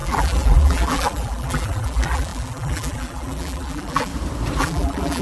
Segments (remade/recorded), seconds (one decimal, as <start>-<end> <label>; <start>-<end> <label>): 0.0-4.1 remade; 4.1-4.6 recorded; 4.6-5.2 remade